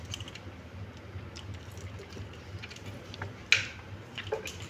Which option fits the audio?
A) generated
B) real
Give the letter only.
B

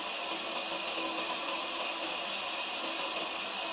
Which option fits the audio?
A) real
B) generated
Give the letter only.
A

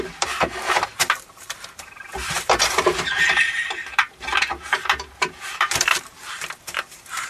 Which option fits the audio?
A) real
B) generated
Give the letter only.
B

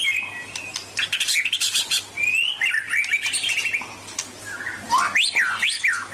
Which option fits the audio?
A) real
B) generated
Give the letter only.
A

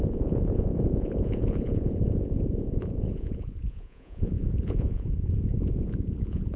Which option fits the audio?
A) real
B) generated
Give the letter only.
B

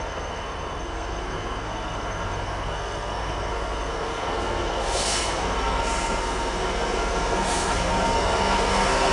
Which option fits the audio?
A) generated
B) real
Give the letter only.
A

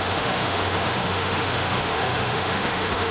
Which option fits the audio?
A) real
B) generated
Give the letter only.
B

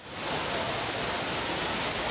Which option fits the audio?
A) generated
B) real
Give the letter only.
B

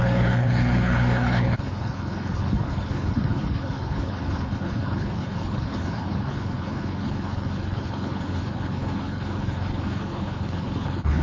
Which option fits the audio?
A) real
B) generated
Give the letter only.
B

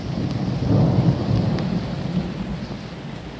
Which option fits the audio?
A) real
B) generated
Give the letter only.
A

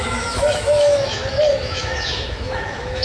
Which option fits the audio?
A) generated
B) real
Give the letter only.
A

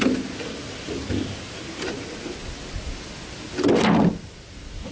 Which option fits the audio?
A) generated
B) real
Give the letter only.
B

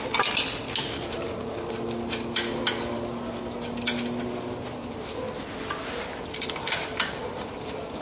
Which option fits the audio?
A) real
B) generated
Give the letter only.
A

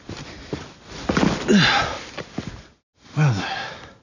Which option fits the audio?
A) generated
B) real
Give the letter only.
B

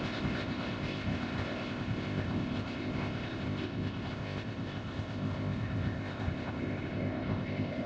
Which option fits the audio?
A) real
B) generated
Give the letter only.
B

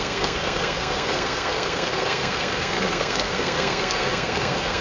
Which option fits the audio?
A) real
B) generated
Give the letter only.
B